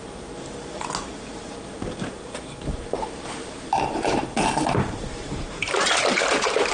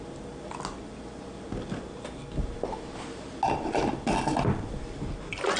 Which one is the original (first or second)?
second